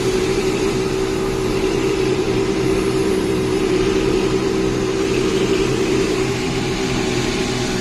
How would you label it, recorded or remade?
remade